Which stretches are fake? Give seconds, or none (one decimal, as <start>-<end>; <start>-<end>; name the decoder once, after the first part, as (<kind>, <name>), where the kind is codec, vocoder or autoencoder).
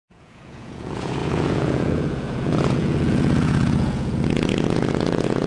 0.0-5.5 (vocoder, Vocos)